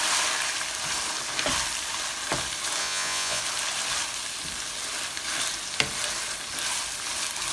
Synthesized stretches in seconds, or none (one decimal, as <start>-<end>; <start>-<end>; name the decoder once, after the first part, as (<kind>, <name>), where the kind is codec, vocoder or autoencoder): 2.8-3.4 (vocoder, Vocos)